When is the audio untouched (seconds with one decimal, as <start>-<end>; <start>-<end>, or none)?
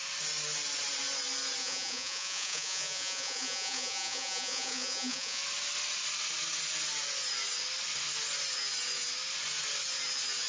0.0-1.6; 5.4-10.5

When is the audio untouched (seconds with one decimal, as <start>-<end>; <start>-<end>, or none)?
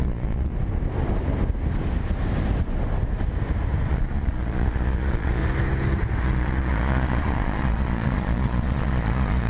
0.5-3.9; 5.4-6.2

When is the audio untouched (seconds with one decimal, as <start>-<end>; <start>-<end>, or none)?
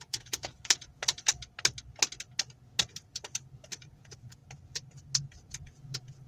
1.3-3.8; 4.4-5.5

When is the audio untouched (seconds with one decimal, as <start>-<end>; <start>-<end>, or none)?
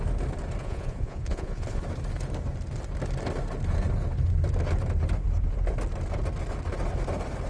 0.0-0.6; 1.8-7.5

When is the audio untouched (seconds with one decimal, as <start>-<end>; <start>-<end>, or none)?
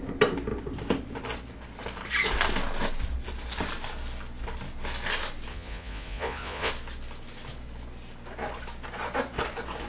0.0-5.5; 6.7-9.9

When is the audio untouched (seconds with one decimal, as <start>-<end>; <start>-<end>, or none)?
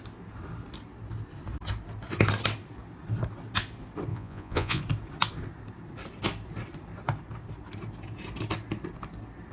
0.0-4.1; 4.8-9.5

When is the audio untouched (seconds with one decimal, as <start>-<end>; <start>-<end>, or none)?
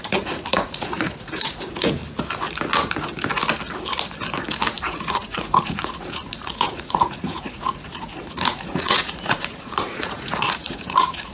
2.0-4.8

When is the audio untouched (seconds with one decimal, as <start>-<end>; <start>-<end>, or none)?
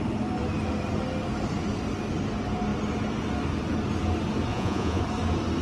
0.0-4.5; 5.0-5.6